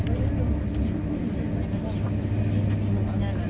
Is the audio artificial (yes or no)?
no